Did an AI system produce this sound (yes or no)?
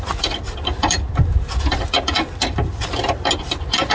no